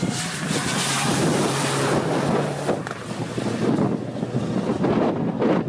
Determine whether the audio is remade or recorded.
recorded